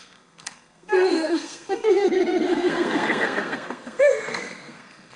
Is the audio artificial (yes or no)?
yes